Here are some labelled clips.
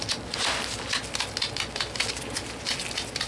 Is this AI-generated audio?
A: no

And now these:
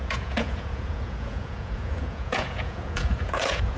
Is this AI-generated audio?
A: yes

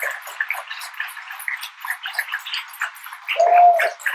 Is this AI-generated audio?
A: no